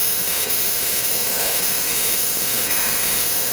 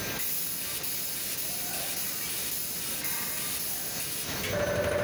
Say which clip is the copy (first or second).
first